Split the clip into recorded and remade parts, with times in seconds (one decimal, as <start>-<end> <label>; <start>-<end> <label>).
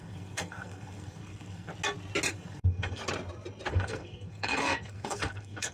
0.0-1.7 remade; 1.7-2.3 recorded; 2.3-3.0 remade; 3.0-3.7 recorded; 3.7-5.7 remade